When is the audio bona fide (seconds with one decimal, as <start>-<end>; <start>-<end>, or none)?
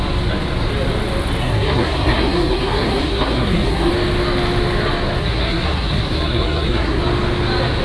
0.0-1.4; 3.9-5.2; 7.0-7.8